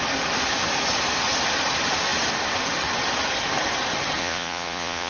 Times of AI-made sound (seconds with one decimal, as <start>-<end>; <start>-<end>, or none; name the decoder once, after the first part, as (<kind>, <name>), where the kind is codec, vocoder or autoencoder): 4.2-5.1 (vocoder, Vocos)

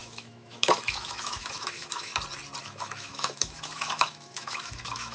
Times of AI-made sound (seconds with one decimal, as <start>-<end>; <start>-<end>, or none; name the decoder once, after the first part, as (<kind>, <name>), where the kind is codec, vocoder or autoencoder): 0.0-2.1 (autoencoder, DAC-VAE); 2.6-5.1